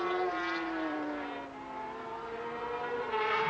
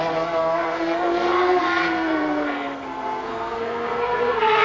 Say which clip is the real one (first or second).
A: first